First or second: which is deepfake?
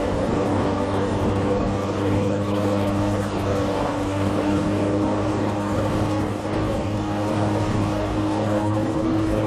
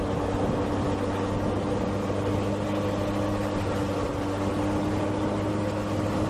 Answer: first